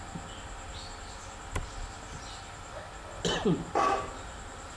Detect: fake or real real